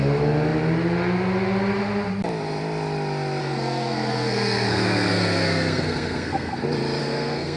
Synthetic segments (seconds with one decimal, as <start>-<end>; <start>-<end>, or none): 3.4-6.6; 7.0-7.6